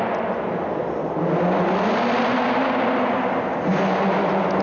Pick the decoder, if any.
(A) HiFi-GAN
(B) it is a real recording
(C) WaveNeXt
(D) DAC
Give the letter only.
B